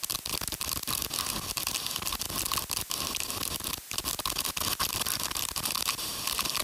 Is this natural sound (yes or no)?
yes